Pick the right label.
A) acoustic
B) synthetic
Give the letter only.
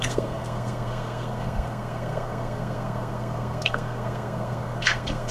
B